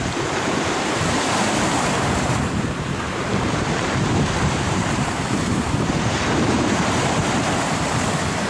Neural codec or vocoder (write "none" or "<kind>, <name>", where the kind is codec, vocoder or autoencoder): vocoder, BigVGAN v2